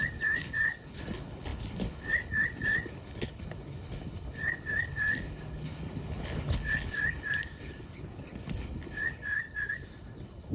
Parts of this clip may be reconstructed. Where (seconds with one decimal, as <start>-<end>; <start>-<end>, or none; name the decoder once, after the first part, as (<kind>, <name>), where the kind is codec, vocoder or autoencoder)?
0.0-10.5 (codec, HILCodec)